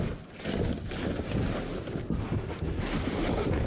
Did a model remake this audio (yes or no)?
no